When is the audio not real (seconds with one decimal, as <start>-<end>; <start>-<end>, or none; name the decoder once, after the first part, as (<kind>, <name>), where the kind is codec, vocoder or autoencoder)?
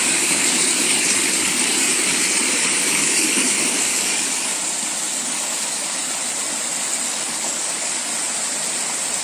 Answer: 0.0-4.5 (codec, DAC); 5.2-6.0; 7.1-8.1